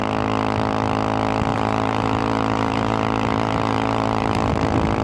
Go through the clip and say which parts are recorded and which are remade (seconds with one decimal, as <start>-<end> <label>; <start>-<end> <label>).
0.0-1.5 recorded; 1.5-4.5 remade; 4.5-5.0 recorded